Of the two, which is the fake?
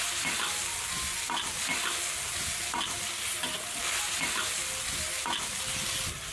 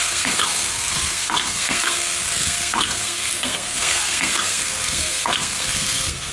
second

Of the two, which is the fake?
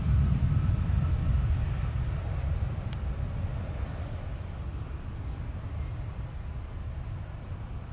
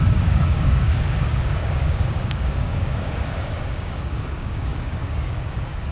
second